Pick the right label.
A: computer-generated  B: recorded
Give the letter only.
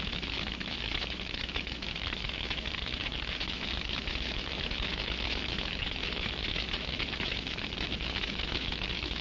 A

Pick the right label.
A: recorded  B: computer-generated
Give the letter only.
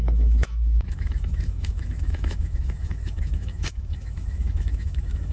B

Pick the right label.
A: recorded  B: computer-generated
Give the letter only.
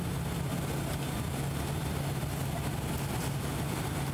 A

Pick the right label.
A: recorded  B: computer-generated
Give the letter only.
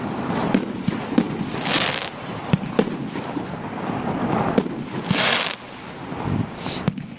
A